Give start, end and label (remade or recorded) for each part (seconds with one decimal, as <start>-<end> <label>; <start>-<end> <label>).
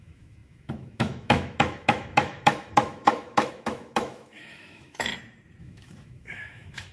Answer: 0.0-5.1 remade; 5.1-5.6 recorded; 5.6-6.9 remade